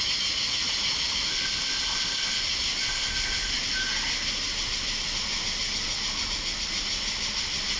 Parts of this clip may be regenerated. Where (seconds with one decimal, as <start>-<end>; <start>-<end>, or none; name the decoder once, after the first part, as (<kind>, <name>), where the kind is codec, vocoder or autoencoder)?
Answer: 1.3-2.4 (codec, ZipCodec); 2.8-3.5